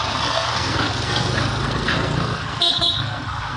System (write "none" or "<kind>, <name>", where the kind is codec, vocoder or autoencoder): codec, SNAC